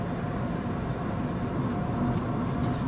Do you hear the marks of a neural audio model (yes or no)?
no